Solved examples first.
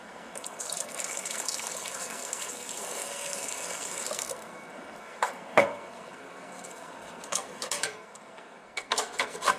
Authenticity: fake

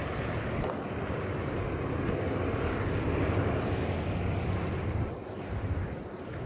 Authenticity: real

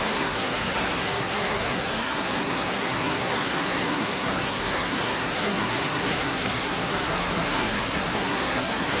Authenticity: fake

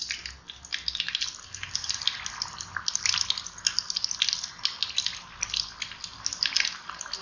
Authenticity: real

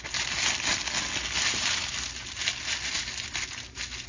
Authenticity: real